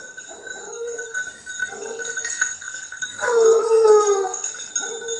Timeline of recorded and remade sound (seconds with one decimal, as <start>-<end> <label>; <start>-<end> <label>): 0.0-0.6 recorded; 0.6-1.2 remade; 1.2-1.6 recorded; 1.6-4.7 remade; 4.7-5.2 recorded